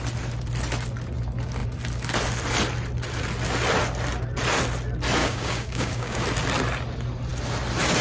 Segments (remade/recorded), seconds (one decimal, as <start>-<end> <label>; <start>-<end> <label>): 0.0-5.2 recorded; 5.2-6.2 remade; 6.2-8.0 recorded